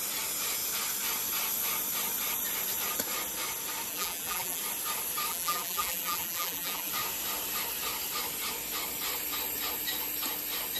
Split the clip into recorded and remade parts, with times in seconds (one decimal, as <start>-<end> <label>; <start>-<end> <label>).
0.0-3.9 recorded; 3.9-4.6 remade; 4.6-5.3 recorded; 5.3-6.9 remade; 6.9-10.8 recorded